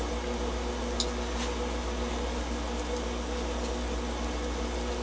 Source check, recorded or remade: recorded